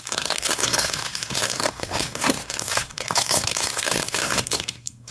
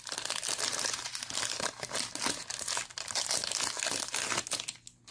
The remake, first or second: first